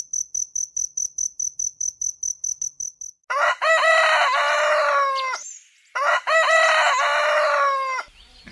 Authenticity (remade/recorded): recorded